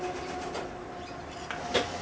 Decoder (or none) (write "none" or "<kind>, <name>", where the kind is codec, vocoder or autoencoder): none